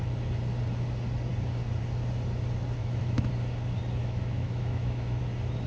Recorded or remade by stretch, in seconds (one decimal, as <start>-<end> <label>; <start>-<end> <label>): 0.0-2.8 recorded; 2.8-3.3 remade; 3.3-4.0 recorded; 4.0-5.2 remade; 5.2-5.7 recorded